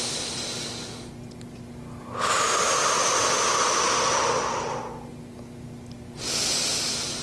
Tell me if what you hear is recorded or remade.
recorded